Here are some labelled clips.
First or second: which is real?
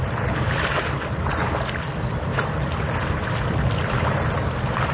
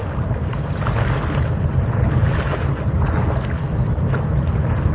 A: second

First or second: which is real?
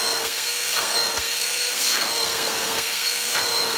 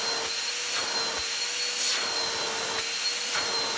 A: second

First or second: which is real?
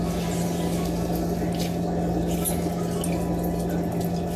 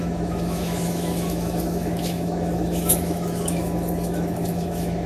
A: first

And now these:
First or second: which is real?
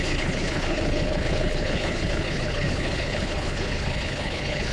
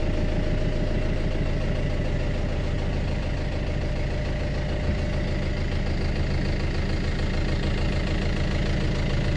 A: second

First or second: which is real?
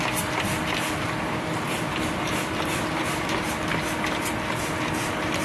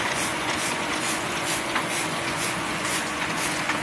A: first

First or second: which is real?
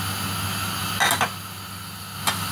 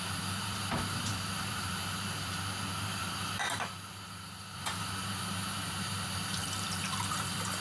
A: first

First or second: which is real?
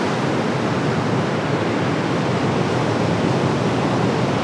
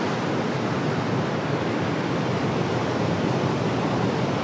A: first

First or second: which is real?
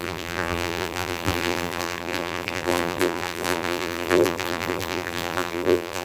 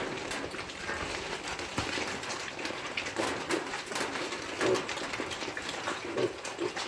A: second